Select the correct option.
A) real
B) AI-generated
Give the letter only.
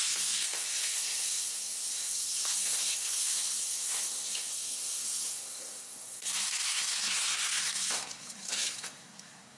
B